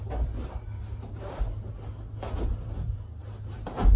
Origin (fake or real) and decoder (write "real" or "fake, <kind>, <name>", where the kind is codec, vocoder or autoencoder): real